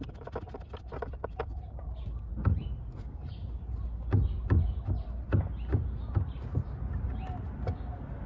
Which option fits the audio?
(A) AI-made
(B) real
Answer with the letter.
B